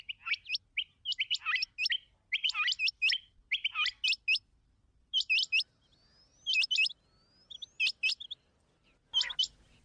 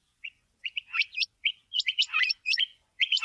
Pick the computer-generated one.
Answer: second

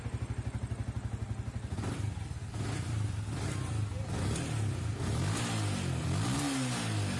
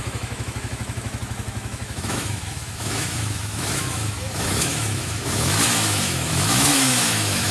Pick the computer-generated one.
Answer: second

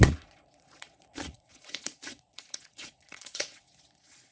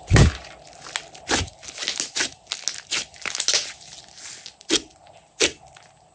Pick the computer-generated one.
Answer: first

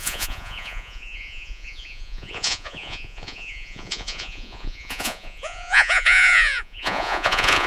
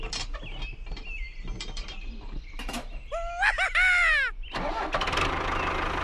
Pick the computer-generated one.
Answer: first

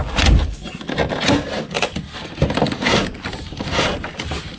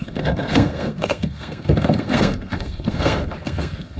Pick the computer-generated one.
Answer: second